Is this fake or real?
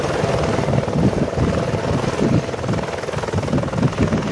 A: real